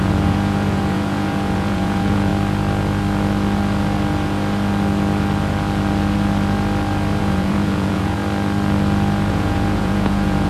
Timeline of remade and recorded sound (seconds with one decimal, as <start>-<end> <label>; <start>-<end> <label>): 0.0-2.3 remade; 2.3-7.2 recorded; 7.2-8.2 remade; 8.2-9.3 recorded; 9.3-10.5 remade